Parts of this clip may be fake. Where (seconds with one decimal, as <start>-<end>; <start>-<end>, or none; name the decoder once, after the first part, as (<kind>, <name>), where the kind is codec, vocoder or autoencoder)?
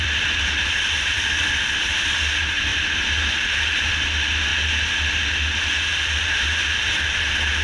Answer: 0.0-2.7 (vocoder, BigVGAN v2); 3.9-4.5; 6.2-7.6